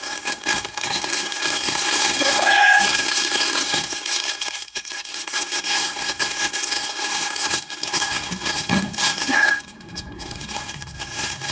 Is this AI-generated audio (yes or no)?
yes